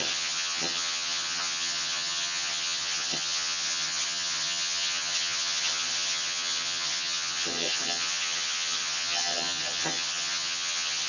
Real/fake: fake